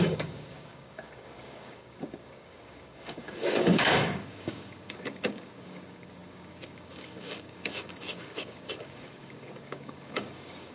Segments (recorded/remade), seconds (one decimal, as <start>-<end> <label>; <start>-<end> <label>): 0.0-10.7 remade